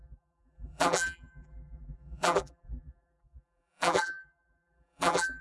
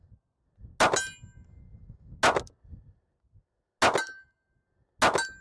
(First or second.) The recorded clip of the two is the second